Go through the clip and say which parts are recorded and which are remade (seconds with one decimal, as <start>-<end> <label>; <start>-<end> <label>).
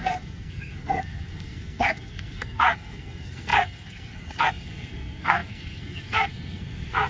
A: 0.0-7.1 remade